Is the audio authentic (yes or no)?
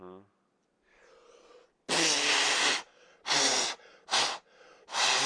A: yes